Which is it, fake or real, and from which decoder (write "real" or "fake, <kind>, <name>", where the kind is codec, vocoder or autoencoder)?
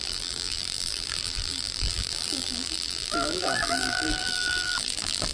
fake, vocoder, BigVGAN v2